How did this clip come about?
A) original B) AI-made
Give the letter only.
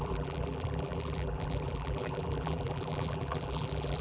B